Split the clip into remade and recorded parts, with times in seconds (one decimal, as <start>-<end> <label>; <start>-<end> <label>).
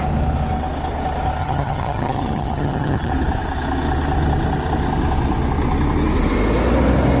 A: 0.0-1.4 recorded; 1.4-3.1 remade; 3.1-7.2 recorded